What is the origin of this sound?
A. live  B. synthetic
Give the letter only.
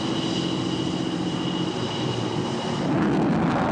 A